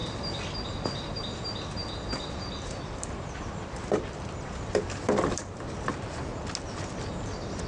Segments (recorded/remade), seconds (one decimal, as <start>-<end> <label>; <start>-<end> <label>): 0.0-1.8 recorded; 1.8-5.9 remade; 5.9-7.7 recorded